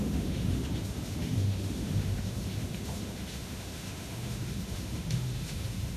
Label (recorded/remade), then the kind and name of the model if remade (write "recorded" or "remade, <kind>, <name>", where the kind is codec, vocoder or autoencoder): remade, autoencoder, DAC-VAE